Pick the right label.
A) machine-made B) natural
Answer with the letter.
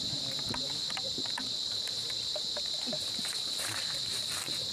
A